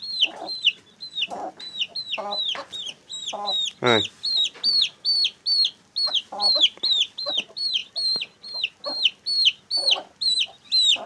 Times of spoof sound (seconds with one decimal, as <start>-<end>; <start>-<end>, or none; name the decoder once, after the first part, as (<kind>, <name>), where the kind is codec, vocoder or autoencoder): none